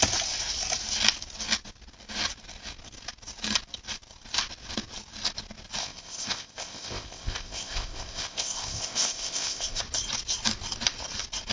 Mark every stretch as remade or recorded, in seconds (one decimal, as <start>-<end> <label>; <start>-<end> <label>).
0.0-5.8 recorded; 5.8-9.8 remade; 9.8-11.5 recorded